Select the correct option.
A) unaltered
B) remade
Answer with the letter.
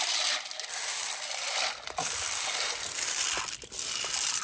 A